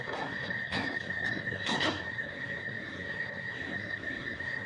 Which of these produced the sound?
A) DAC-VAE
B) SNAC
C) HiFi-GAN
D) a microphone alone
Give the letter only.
B